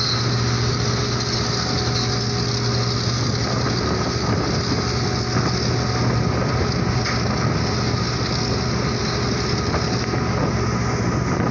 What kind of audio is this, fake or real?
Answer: real